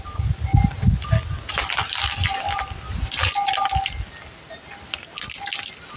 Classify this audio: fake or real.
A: real